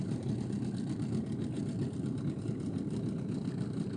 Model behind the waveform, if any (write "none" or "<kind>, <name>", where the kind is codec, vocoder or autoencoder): vocoder, BigVGAN v2